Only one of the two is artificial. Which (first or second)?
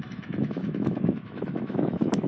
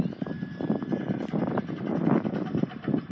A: first